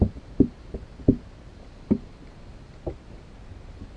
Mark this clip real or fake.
real